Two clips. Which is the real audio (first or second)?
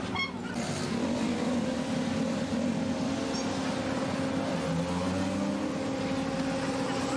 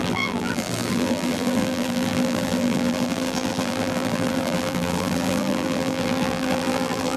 first